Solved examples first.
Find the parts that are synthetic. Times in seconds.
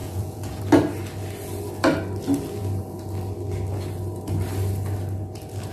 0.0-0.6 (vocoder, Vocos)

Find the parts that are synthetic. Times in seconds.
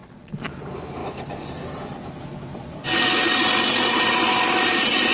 0.0-0.5 (vocoder, Vocos)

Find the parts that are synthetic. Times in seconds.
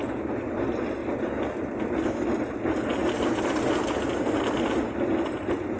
none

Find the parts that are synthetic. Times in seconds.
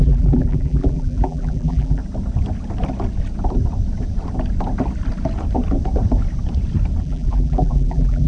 0.0-2.0 (vocoder, BigVGAN v2); 7.0-8.3